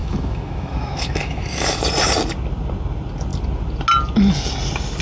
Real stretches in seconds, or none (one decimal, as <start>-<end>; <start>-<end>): 1.8-5.0

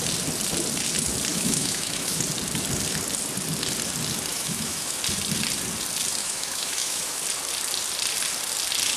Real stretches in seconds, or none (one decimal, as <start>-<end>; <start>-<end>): 0.0-1.3; 2.2-4.3; 5.0-6.2; 7.2-9.0